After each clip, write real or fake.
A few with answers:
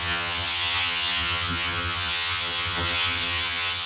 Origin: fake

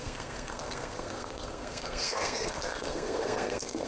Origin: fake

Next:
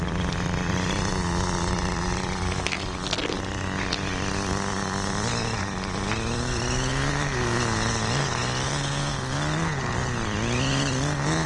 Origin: real